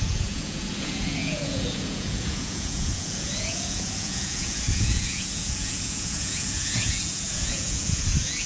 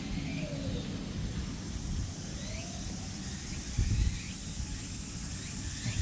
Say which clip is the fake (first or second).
first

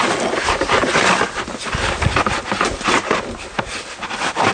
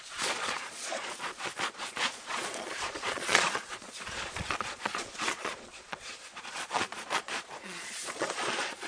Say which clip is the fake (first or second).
second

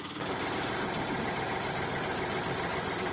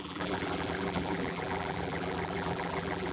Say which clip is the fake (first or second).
second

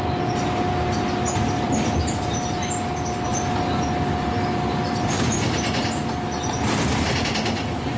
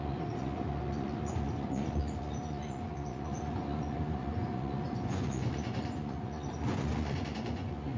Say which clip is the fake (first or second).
second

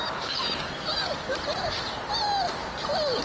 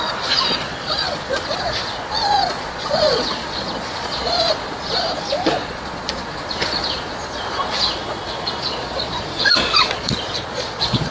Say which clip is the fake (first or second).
second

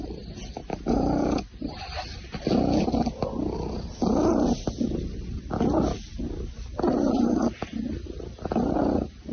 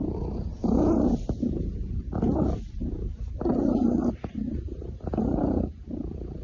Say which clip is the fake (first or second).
second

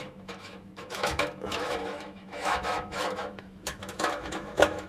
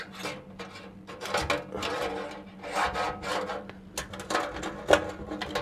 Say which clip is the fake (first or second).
first